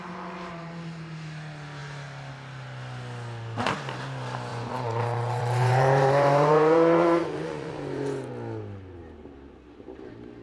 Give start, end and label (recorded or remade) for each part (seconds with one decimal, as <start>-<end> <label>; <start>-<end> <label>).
0.0-4.5 recorded; 4.5-8.3 remade; 8.3-10.4 recorded